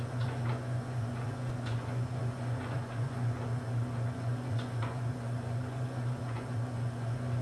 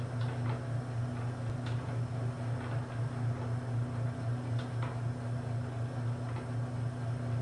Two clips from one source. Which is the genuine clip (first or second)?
second